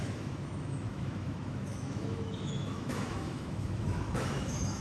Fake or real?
fake